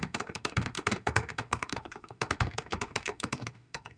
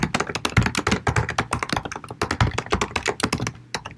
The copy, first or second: first